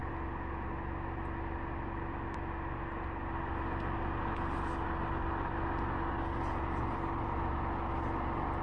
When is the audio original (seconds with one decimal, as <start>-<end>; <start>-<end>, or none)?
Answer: 0.0-8.6

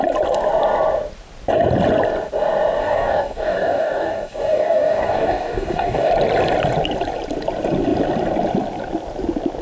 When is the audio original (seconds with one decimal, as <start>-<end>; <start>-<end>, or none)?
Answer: 0.0-2.8; 6.1-9.6